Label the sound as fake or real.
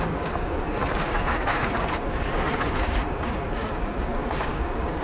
fake